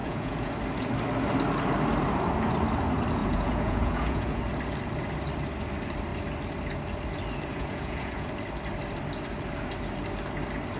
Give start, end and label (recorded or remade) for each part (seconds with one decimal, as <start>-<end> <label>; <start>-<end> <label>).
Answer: 0.0-0.5 remade; 0.5-3.2 recorded; 3.2-4.4 remade; 4.4-7.5 recorded; 7.5-8.3 remade; 8.3-10.8 recorded